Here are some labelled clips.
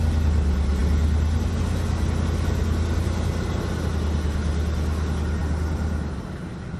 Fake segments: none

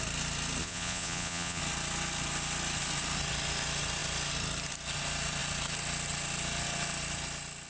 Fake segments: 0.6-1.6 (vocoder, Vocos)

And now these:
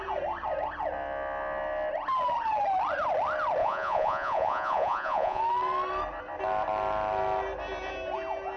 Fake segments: 3.6-5.4 (vocoder, Vocos)

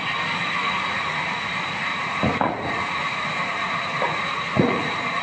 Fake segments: 0.6-1.4 (vocoder, Vocos); 1.9-5.2